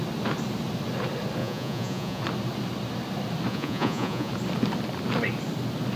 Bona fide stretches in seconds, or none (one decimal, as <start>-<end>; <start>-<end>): 0.0-1.4; 2.2-3.5; 4.3-6.0